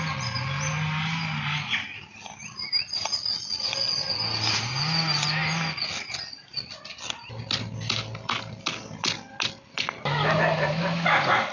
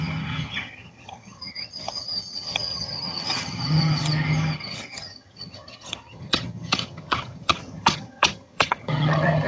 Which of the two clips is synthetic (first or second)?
second